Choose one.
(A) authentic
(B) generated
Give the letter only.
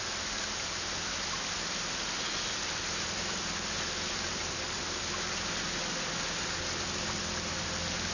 A